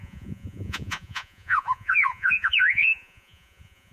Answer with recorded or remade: remade